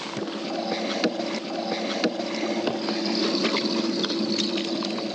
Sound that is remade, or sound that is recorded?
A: recorded